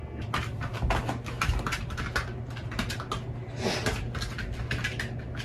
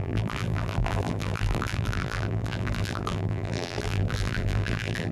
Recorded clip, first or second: first